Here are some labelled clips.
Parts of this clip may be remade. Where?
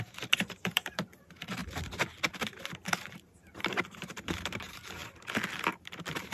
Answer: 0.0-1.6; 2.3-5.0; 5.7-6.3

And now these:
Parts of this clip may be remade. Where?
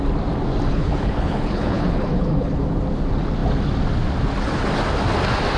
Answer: 0.7-2.6